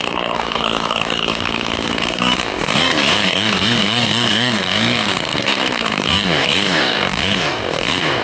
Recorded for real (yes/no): no